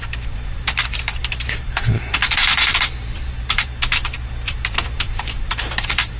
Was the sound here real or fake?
fake